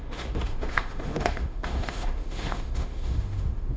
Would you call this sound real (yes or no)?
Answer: no